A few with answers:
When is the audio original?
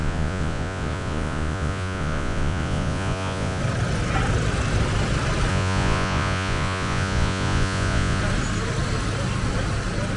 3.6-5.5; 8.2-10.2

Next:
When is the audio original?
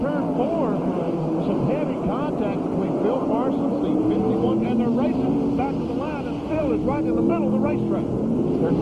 0.0-0.8; 1.4-8.8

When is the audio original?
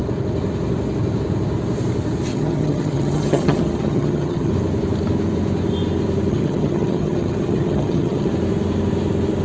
0.0-2.3; 4.5-6.3; 8.3-9.4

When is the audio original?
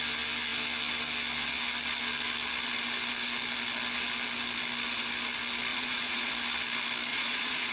0.0-5.7; 6.3-7.1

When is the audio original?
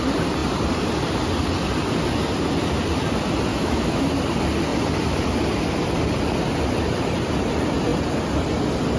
0.0-3.5; 4.1-9.0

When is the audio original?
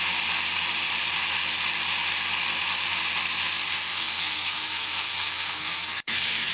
0.0-3.9